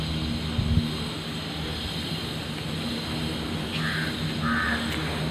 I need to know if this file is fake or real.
real